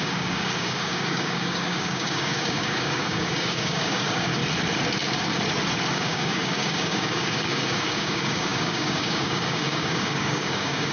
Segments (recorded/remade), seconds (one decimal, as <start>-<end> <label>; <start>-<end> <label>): 0.0-4.4 remade; 4.4-5.9 recorded; 5.9-10.9 remade